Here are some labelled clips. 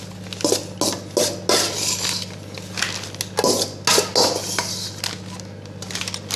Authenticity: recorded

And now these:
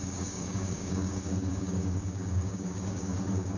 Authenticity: remade